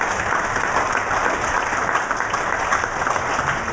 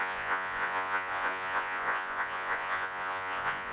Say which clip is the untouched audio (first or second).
first